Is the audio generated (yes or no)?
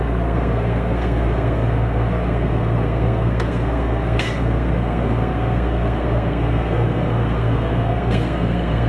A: yes